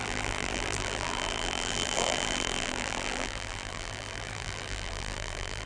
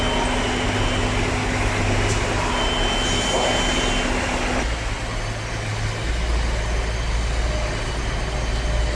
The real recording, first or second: second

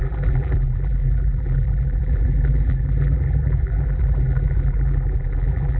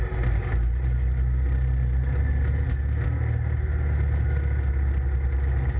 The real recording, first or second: second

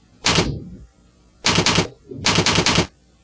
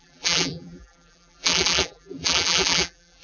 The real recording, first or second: first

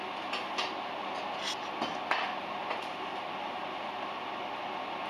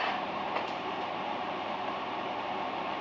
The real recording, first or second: first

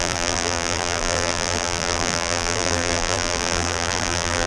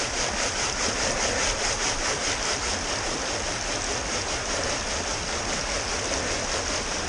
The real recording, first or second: second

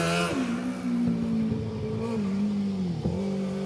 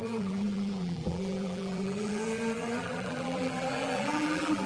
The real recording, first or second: first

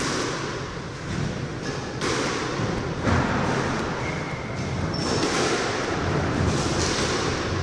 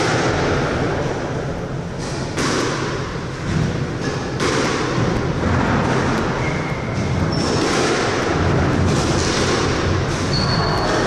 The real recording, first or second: second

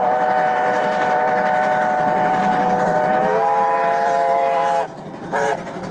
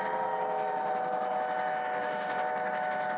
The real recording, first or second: second